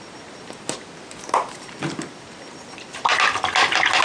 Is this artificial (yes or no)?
no